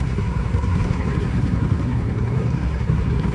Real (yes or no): no